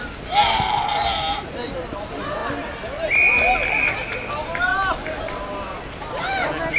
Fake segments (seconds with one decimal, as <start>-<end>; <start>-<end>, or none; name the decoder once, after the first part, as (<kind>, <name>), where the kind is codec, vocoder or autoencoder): none